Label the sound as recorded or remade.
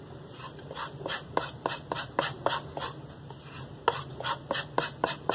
recorded